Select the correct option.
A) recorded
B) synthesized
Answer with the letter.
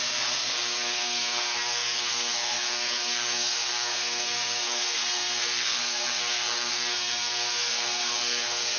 B